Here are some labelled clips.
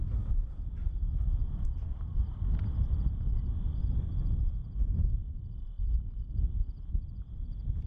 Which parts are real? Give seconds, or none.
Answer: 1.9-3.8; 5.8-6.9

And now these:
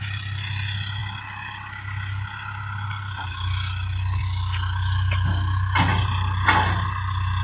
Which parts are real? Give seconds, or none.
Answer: 0.0-7.4

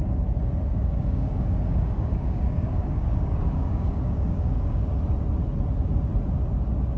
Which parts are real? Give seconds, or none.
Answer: 0.0-0.7; 4.9-7.0

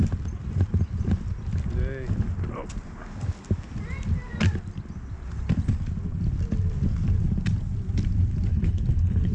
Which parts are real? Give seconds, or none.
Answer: 0.0-8.5